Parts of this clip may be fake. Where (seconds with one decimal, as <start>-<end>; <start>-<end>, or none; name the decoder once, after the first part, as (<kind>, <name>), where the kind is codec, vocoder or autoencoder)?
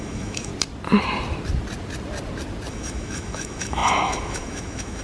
0.0-0.5 (autoencoder, DAC-VAE); 2.7-5.0